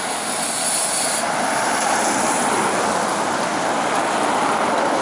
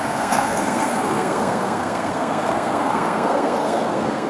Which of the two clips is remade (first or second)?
second